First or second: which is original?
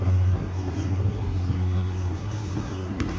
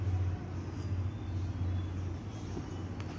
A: second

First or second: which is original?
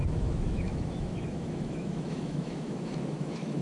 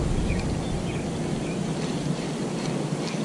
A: second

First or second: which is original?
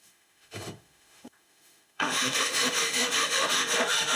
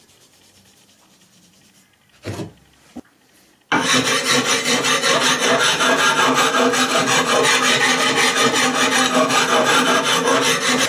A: second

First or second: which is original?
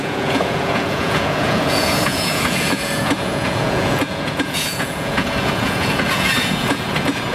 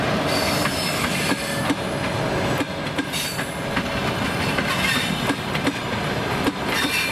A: second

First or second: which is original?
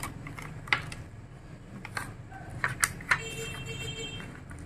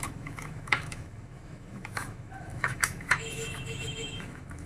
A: first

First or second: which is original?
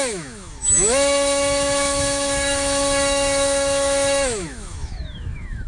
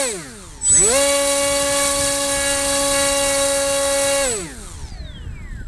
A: second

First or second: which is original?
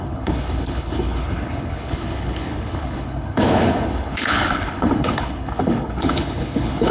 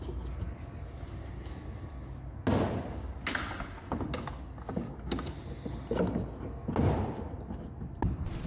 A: second